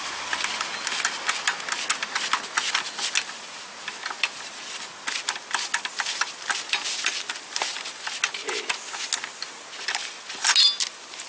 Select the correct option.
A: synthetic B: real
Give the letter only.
B